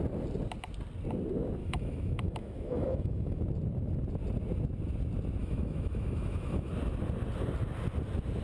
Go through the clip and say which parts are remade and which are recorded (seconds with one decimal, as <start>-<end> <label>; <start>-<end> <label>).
0.0-1.6 recorded; 1.6-3.4 remade; 3.4-5.4 recorded; 5.4-6.7 remade; 6.7-8.4 recorded